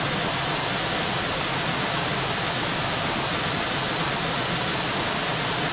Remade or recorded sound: recorded